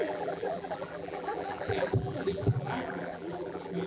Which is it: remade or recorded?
remade